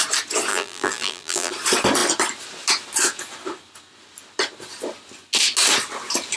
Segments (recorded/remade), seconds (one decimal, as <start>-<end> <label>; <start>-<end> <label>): 0.0-0.5 recorded; 0.5-1.5 remade; 1.5-6.4 recorded